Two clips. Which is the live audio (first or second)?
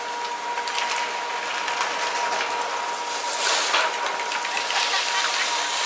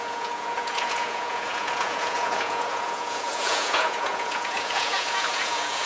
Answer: first